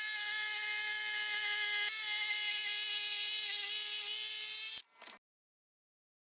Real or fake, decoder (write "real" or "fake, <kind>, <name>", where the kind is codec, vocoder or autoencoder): real